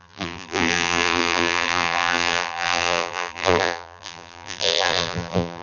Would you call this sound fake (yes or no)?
yes